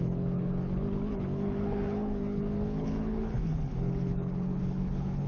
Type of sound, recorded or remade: remade